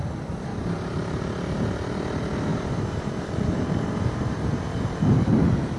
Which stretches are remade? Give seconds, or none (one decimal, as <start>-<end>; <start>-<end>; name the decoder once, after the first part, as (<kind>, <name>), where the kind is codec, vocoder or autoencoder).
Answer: 0.5-1.2 (vocoder, BigVGAN v2); 2.5-5.0